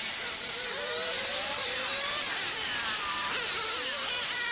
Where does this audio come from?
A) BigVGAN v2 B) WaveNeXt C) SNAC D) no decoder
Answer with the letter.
A